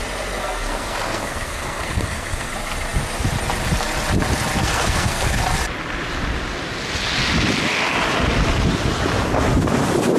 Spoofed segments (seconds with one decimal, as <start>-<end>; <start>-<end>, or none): 0.4-2.5; 4.6-5.4